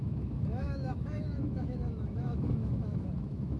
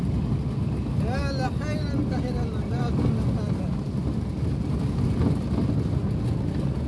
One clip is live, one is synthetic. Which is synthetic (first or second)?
first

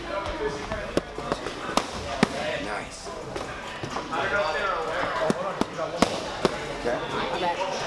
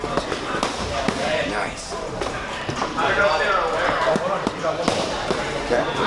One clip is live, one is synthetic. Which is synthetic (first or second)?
second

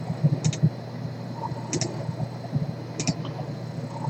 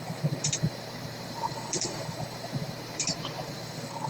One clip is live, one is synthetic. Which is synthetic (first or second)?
second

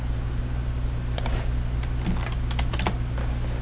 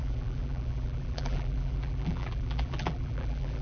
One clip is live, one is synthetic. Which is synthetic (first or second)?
second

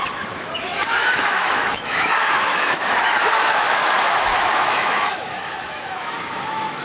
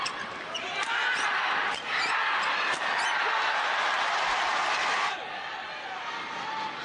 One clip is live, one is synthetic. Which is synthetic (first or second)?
first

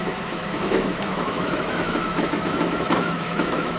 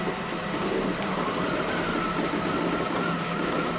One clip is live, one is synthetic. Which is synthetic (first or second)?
first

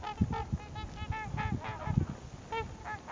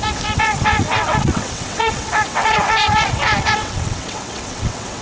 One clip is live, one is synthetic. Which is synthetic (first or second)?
second